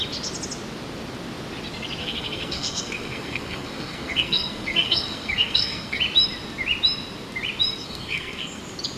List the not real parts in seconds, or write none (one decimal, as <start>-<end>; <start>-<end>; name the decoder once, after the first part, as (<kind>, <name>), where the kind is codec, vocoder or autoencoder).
2.0-6.0 (codec, SNAC); 7.8-8.6